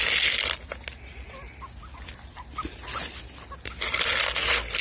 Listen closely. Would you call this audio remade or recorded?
recorded